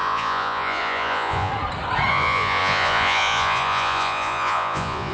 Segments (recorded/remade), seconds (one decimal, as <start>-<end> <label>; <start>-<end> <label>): 0.0-1.5 remade; 1.5-2.1 recorded; 2.1-5.1 remade

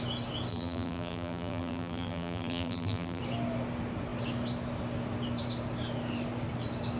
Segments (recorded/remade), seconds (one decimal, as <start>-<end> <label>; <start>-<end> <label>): 0.0-0.5 recorded; 0.5-3.2 remade; 3.2-7.0 recorded

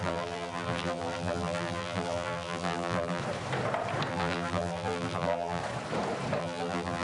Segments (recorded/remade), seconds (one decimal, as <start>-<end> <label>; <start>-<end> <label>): 0.0-3.2 remade; 3.2-4.1 recorded; 4.1-5.6 remade; 5.6-6.4 recorded; 6.4-7.0 remade

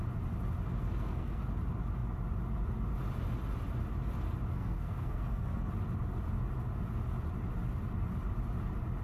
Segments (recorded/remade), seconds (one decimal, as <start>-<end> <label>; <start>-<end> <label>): 0.0-0.8 recorded; 0.8-1.4 remade; 1.4-4.5 recorded; 4.5-5.7 remade; 5.7-9.0 recorded

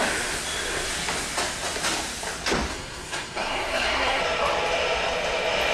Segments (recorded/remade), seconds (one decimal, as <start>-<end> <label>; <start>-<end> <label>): 0.0-2.7 recorded; 2.7-4.2 remade; 4.2-5.7 recorded

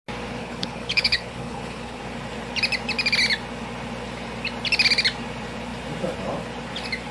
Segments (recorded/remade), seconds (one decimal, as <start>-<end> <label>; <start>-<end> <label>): 0.0-0.4 recorded; 0.4-2.0 remade; 2.0-7.1 recorded